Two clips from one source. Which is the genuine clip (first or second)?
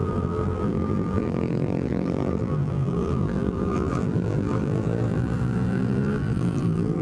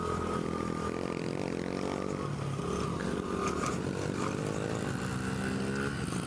second